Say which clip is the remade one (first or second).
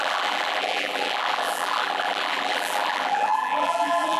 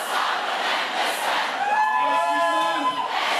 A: first